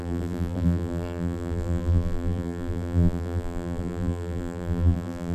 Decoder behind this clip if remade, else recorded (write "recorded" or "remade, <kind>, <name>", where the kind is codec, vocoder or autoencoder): remade, vocoder, BigVGAN v2